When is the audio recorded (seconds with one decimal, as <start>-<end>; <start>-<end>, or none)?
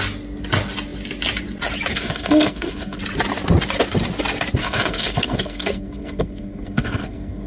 0.0-1.9; 3.0-4.6